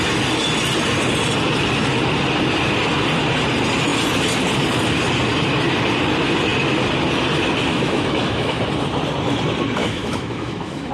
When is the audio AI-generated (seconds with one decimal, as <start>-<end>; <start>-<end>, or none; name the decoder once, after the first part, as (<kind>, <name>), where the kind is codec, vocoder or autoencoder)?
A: 7.7-8.6 (autoencoder, DAC-VAE); 9.8-10.9